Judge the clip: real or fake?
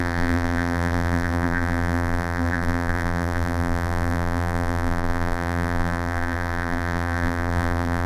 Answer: fake